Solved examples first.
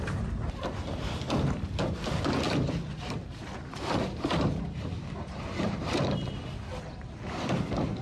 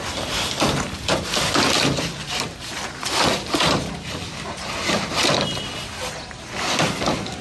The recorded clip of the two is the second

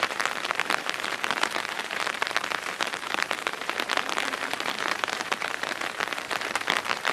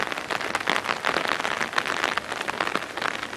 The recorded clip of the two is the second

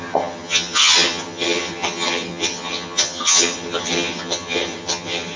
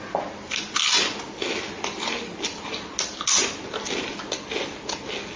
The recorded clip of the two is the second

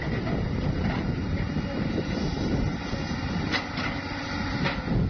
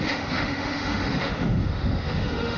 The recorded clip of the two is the first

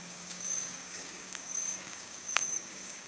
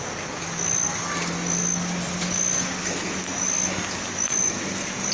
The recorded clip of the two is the second